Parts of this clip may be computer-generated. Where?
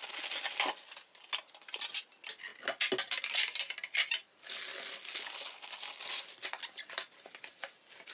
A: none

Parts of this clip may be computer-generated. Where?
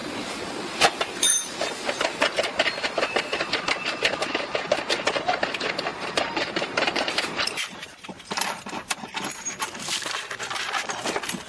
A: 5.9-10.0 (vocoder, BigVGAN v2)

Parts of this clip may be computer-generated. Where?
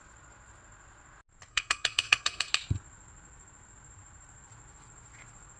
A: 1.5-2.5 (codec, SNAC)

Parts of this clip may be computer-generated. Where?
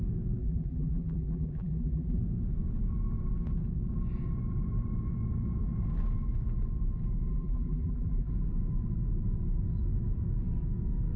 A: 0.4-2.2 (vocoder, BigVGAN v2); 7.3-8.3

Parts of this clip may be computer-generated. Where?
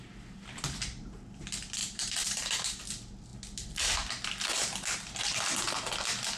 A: 1.8-2.9 (vocoder, BigVGAN v2)